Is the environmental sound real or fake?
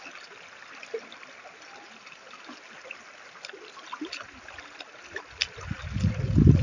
real